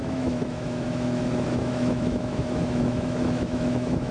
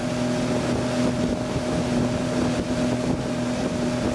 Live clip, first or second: second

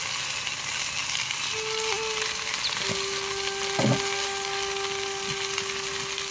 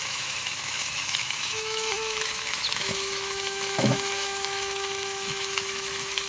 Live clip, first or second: first